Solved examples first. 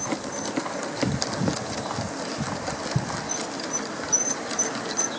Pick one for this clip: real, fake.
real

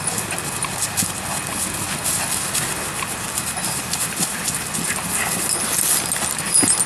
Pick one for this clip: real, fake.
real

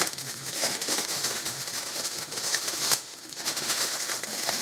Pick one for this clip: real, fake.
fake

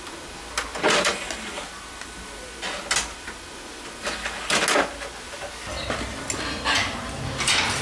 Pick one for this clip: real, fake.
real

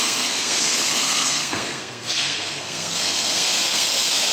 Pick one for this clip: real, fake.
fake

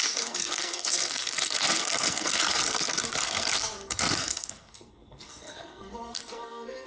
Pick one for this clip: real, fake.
fake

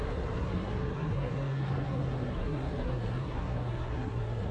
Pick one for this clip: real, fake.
fake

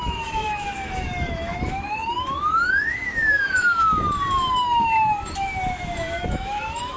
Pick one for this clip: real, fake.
fake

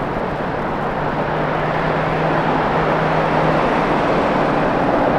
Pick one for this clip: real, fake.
real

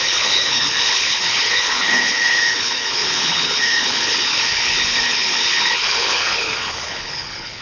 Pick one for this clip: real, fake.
fake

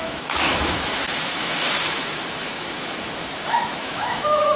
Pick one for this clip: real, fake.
fake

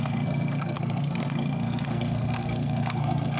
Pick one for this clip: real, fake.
fake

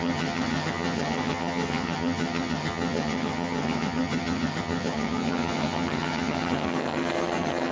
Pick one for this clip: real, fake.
fake